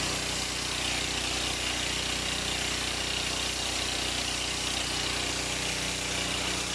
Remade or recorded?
recorded